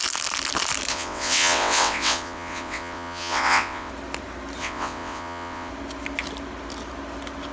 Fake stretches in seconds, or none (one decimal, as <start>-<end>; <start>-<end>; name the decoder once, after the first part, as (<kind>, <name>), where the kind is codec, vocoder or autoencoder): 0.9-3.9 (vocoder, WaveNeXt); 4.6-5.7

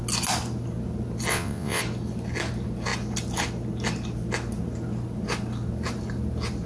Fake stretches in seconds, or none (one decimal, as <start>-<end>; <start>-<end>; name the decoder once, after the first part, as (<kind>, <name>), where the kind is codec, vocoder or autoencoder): 1.3-1.8 (vocoder, WaveNeXt)

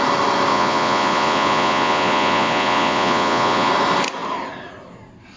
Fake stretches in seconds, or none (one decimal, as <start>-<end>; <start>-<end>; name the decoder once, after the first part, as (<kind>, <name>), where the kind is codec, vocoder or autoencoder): 0.5-3.7 (vocoder, Vocos)

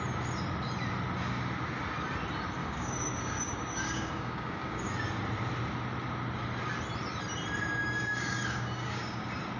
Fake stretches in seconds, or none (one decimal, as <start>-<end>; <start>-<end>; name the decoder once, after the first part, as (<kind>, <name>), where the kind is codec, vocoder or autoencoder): 2.6-4.9 (codec, DAC); 7.8-9.2

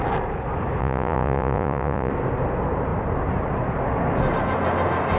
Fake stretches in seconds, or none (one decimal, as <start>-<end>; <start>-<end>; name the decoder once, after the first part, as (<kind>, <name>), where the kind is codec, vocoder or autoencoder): 0.8-2.1 (vocoder, Vocos)

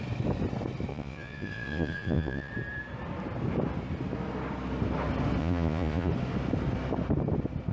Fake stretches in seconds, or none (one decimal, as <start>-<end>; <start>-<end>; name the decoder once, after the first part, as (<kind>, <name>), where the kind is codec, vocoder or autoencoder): 0.9-2.5 (vocoder, Vocos); 5.4-6.1